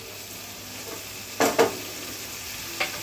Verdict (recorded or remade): recorded